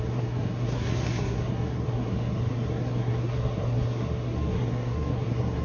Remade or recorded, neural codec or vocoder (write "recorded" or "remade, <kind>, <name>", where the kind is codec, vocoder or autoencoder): remade, codec, SNAC